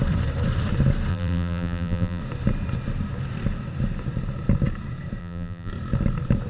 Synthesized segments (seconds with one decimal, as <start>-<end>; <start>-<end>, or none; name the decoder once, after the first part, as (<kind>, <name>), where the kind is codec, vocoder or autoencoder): 1.1-2.2 (vocoder, BigVGAN v2); 5.2-5.7